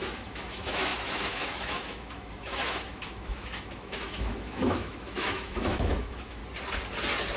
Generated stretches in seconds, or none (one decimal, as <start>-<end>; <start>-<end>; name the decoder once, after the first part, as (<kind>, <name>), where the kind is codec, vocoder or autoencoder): 0.0-6.4 (autoencoder, DAC-VAE)